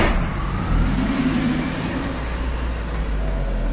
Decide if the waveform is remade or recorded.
recorded